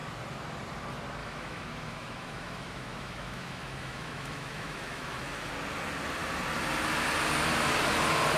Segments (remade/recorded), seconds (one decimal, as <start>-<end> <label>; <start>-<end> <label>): 0.0-1.2 recorded; 1.2-5.5 remade; 5.5-8.4 recorded